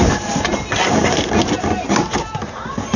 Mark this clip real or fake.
real